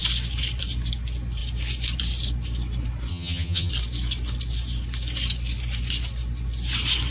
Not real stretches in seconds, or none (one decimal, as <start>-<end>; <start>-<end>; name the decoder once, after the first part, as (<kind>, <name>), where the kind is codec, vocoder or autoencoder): 3.1-3.7 (vocoder, HiFi-GAN)